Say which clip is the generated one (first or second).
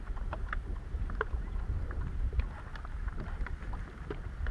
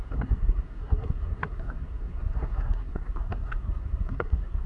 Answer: second